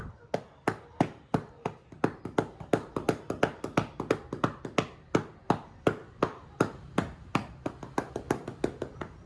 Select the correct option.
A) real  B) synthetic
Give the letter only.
A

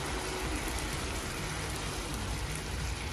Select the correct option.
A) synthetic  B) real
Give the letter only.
B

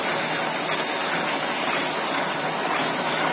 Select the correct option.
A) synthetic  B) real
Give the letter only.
B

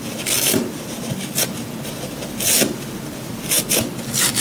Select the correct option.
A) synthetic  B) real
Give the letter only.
B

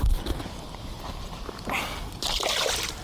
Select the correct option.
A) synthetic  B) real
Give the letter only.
B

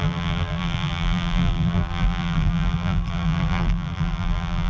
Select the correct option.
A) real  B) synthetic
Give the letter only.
B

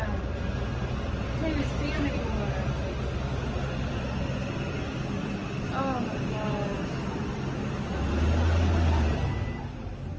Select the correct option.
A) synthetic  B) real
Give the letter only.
B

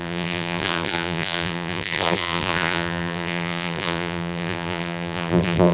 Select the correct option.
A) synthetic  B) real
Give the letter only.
A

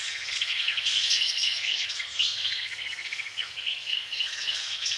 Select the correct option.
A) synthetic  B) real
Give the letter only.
A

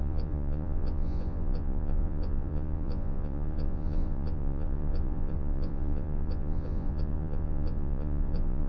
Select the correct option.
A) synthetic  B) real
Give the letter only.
A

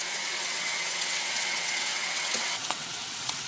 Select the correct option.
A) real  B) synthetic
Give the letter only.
B